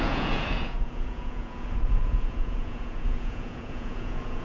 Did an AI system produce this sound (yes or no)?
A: yes